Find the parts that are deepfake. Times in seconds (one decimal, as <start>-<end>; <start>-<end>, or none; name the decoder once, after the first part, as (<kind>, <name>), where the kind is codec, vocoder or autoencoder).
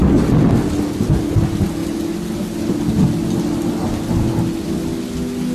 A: none